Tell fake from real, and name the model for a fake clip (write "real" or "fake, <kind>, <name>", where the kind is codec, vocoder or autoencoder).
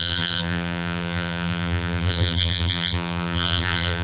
fake, vocoder, BigVGAN v2